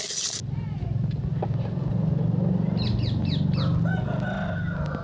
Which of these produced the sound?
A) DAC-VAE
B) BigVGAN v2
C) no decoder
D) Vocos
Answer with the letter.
C